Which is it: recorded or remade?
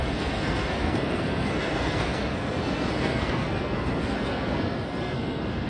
remade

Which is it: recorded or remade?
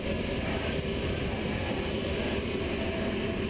recorded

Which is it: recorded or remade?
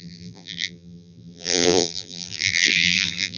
remade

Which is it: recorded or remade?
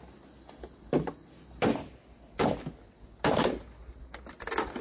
recorded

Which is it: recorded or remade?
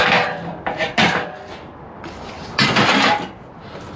recorded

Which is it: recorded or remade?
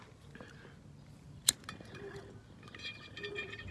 recorded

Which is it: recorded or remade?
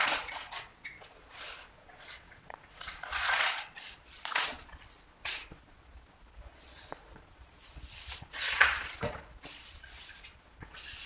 remade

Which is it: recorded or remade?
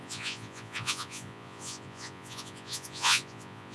remade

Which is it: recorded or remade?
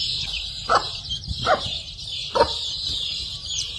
remade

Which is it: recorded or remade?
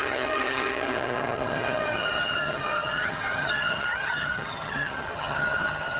remade